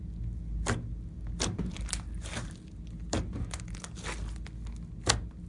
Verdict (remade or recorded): recorded